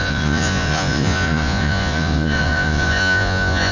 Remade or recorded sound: remade